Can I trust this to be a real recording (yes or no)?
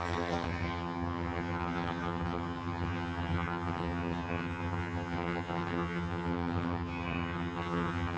no